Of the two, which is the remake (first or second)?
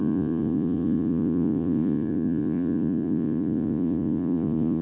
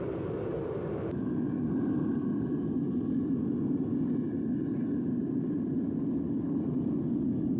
first